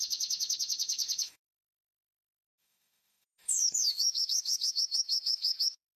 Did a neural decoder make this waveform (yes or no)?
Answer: yes